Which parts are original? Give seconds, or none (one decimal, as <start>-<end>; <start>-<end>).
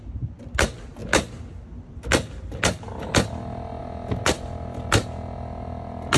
0.0-6.2